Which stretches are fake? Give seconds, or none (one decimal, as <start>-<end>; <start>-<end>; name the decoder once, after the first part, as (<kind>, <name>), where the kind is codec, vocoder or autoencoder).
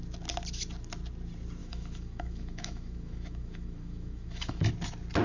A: 1.6-4.7 (autoencoder, DAC-VAE)